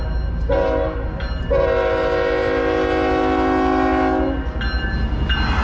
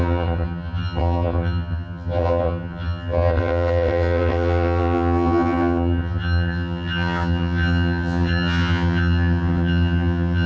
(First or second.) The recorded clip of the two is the first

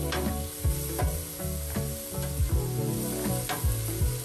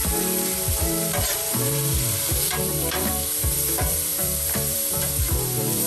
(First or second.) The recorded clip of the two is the first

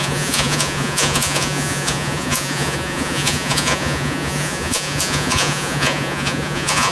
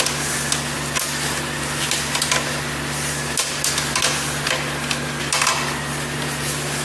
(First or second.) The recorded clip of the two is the second